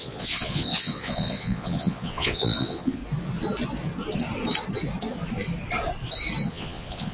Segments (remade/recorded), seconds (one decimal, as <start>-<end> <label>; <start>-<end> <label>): 0.0-3.0 remade; 3.0-6.5 recorded; 6.5-7.1 remade